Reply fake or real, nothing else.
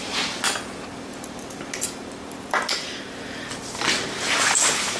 real